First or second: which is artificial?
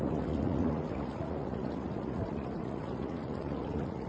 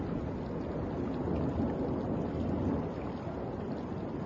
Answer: first